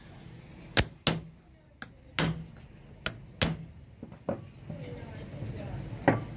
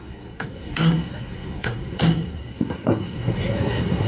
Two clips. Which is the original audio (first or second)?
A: first